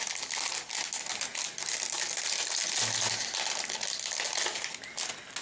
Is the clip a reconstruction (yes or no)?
no